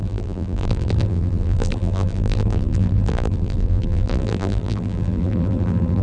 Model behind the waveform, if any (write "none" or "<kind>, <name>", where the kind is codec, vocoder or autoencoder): vocoder, BigVGAN v2